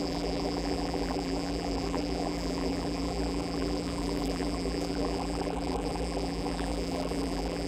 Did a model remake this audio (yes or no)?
yes